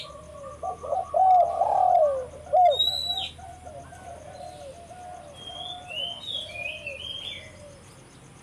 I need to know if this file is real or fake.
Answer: real